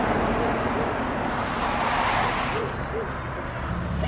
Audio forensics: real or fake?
real